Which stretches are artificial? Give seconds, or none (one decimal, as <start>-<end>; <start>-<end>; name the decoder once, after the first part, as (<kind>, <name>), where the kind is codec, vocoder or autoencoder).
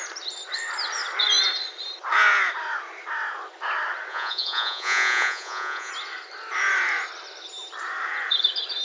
4.1-5.9 (vocoder, Vocos)